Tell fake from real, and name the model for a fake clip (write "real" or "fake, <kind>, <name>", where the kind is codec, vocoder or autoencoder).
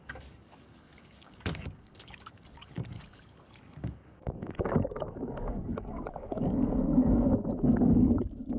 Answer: fake, codec, DAC